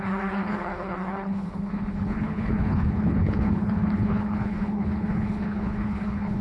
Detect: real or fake fake